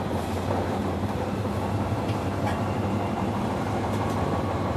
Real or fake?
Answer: fake